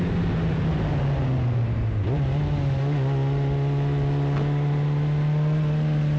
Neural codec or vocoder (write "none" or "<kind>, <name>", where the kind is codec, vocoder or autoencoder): none